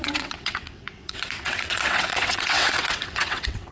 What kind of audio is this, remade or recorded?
remade